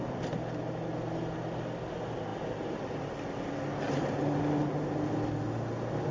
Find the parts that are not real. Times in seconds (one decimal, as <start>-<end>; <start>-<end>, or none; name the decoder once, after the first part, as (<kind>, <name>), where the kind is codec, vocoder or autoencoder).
none